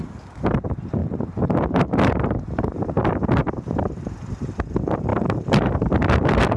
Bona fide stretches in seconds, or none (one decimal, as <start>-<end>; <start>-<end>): 0.0-1.0; 4.6-5.1